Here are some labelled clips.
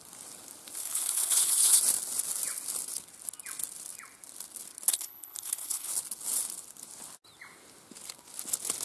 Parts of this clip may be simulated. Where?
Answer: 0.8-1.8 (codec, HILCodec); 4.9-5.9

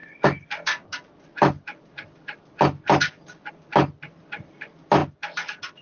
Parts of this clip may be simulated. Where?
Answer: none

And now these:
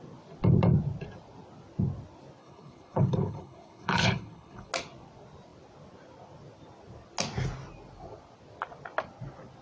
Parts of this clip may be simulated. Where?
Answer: 2.4-4.7 (codec, HILCodec)

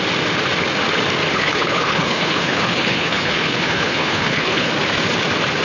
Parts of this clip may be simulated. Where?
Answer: 1.3-4.7 (codec, HILCodec)

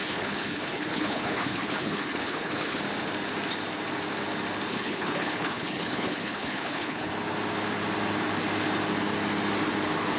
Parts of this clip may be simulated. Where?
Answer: 0.0-2.8 (codec, HILCodec); 4.7-7.1